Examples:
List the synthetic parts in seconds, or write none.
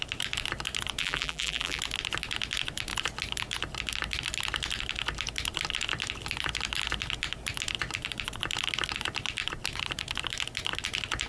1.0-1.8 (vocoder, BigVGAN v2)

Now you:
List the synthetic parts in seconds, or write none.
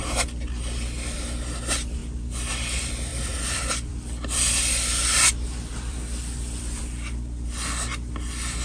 3.1-5.3 (vocoder, BigVGAN v2); 5.9-6.8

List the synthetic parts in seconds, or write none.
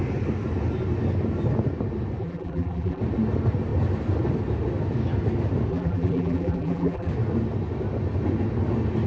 2.2-3.0 (vocoder, BigVGAN v2); 5.7-7.1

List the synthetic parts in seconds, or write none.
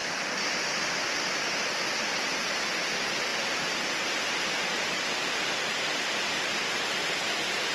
0.0-1.0 (vocoder, BigVGAN v2)